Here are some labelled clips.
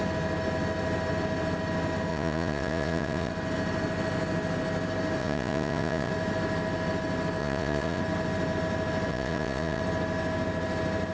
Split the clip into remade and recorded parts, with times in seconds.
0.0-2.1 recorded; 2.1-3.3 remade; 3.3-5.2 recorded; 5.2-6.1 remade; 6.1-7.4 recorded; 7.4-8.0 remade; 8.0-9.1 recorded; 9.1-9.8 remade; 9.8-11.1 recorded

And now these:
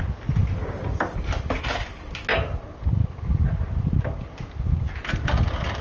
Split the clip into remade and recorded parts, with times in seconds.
0.0-5.8 recorded

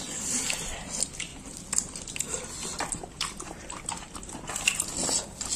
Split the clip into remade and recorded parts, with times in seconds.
0.0-1.3 recorded; 1.3-2.1 remade; 2.1-2.7 recorded; 2.7-3.9 remade; 3.9-5.6 recorded